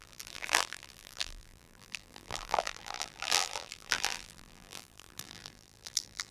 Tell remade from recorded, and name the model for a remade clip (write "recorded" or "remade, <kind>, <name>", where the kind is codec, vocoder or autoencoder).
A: remade, vocoder, BigVGAN v2